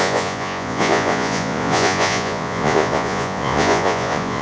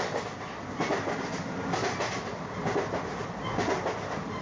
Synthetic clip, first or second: first